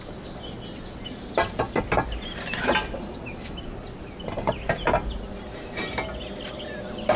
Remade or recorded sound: recorded